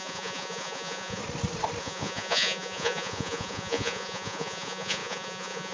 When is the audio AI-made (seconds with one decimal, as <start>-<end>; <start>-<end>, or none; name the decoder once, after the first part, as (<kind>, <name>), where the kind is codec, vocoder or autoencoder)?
0.0-1.2 (vocoder, Vocos); 1.8-5.7